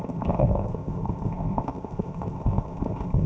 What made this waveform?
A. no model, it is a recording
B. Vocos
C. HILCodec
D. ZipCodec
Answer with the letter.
D